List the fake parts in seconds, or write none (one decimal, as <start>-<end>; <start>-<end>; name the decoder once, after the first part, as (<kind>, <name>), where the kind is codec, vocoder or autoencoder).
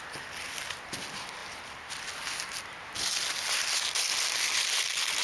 none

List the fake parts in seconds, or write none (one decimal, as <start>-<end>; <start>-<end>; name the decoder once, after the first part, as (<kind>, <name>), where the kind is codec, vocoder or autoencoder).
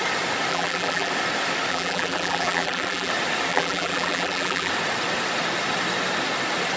0.5-1.1 (vocoder, BigVGAN v2); 1.7-3.1; 3.5-4.7